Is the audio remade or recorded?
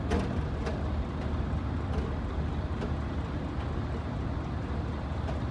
recorded